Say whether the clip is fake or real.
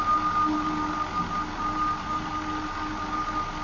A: real